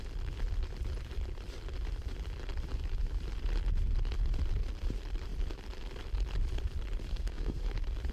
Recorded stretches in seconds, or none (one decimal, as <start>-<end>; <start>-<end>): 0.0-7.1; 7.6-8.1